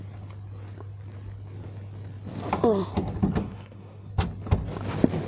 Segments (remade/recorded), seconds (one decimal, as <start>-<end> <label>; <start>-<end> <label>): 0.0-3.4 recorded; 3.4-4.1 remade; 4.1-5.3 recorded